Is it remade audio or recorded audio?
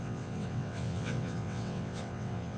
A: remade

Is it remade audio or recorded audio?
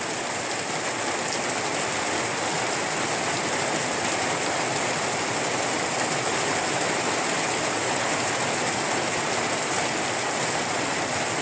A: recorded